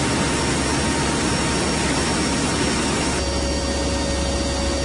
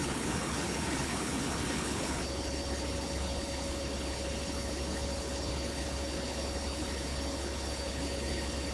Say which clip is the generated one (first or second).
second